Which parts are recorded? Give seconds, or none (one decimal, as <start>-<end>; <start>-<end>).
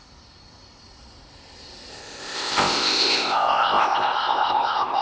0.0-1.9